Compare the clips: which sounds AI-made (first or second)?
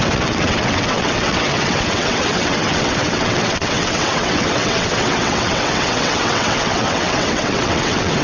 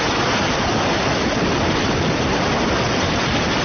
first